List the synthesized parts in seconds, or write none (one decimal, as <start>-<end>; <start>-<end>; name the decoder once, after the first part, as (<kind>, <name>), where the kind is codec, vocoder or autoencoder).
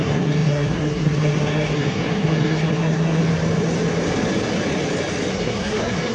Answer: 0.0-3.2 (codec, SNAC); 5.3-6.1